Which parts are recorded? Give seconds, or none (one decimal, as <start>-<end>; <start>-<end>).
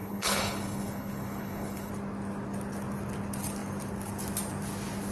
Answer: 1.9-5.1